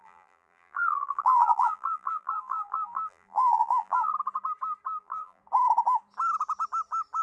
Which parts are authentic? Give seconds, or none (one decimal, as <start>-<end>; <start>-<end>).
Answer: 4.1-5.0; 5.4-7.2